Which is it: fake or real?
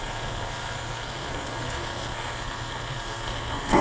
fake